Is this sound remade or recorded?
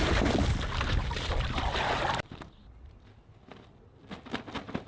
recorded